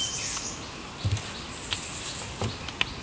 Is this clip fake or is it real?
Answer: real